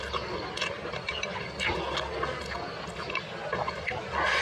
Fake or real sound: real